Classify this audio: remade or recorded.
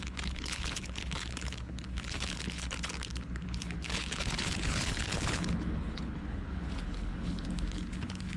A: remade